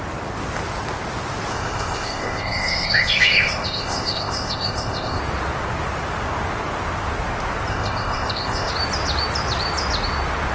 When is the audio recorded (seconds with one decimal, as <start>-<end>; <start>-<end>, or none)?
0.0-1.5; 5.2-7.7; 8.7-10.5